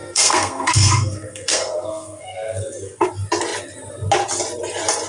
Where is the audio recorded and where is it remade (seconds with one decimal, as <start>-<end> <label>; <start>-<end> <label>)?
0.0-3.1 remade; 3.1-5.1 recorded